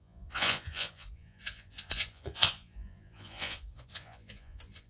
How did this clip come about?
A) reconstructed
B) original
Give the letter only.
A